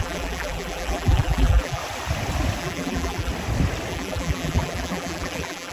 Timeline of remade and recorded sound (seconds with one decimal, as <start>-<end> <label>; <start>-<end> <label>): 0.0-1.8 remade; 1.8-2.6 recorded; 2.6-3.3 remade; 3.3-3.9 recorded; 3.9-5.7 remade